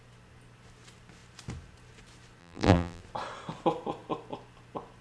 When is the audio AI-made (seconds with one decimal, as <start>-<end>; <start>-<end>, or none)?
2.4-3.0